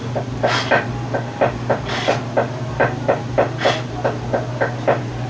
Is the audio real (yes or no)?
yes